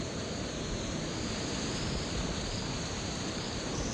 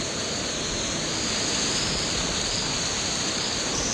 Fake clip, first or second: first